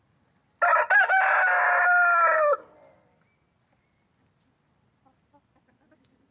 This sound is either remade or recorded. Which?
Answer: recorded